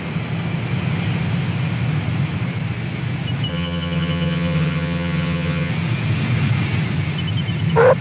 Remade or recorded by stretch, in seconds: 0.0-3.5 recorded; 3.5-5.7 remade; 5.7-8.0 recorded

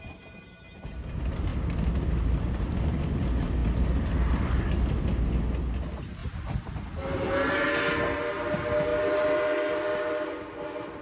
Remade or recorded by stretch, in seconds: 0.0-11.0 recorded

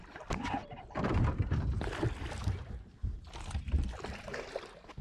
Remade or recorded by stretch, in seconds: 0.0-0.6 recorded; 0.6-3.6 remade; 3.6-5.0 recorded

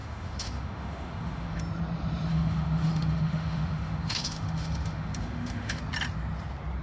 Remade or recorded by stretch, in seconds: 0.0-1.6 remade; 1.6-2.3 recorded; 2.3-5.8 remade; 5.8-6.8 recorded

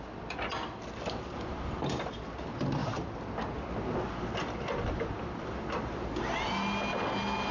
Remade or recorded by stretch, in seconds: 0.0-7.5 recorded

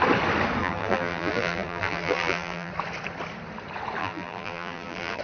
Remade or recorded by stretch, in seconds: 0.0-0.6 recorded; 0.6-2.7 remade; 2.7-4.0 recorded; 4.0-5.2 remade

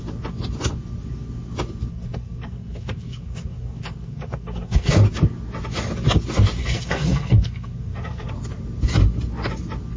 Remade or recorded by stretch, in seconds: 0.0-1.9 recorded; 1.9-4.9 remade; 4.9-6.6 recorded; 6.6-8.3 remade; 8.3-10.0 recorded

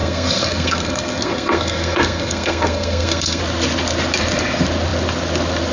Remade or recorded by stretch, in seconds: 0.0-3.4 remade; 3.4-5.7 recorded